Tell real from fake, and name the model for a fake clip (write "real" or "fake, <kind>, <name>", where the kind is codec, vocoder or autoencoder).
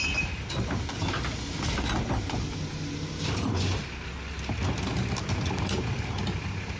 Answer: real